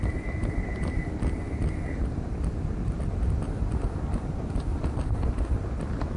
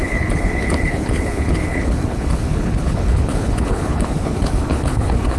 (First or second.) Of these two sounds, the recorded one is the first